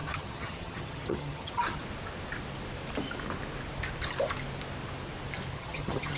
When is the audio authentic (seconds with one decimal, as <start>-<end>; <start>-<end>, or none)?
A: 1.8-5.5